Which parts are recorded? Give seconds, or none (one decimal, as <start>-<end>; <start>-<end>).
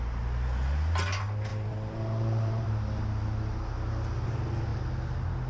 0.0-1.5; 2.7-5.5